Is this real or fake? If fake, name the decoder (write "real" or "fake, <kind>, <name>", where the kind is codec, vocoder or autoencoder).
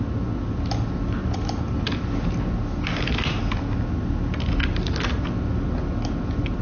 real